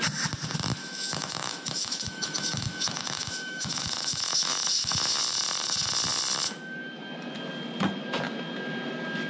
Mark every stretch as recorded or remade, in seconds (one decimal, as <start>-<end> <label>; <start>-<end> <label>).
0.0-0.8 recorded; 0.8-5.2 remade; 5.2-9.3 recorded